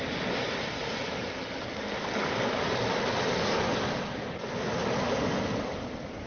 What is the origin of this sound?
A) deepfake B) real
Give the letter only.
B